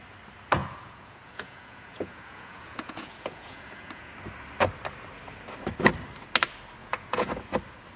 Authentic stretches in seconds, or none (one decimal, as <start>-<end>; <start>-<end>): 0.0-0.6; 4.1-6.8; 7.3-8.0